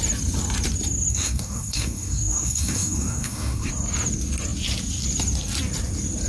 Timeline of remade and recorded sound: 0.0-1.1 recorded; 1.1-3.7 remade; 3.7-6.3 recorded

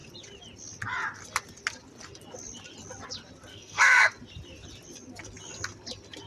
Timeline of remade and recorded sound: 0.0-3.5 recorded; 3.5-4.1 remade; 4.1-6.3 recorded